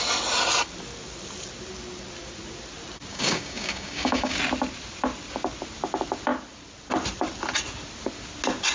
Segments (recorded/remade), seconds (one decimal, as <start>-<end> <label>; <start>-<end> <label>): 0.0-3.1 recorded; 3.1-4.4 remade; 4.4-8.7 recorded